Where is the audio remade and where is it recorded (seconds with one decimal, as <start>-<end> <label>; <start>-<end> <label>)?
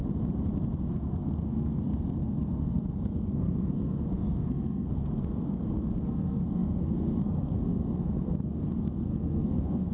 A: 0.0-0.9 recorded; 0.9-9.9 remade